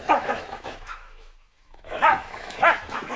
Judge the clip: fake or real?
fake